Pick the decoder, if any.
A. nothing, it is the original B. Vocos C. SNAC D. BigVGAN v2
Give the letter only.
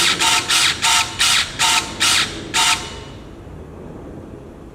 A